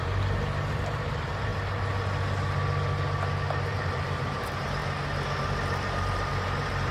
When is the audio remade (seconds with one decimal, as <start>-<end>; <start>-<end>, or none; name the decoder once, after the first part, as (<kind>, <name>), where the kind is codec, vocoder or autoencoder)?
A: 0.0-1.5 (vocoder, BigVGAN v2); 3.6-4.8; 6.0-6.9